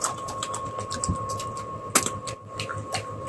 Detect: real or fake real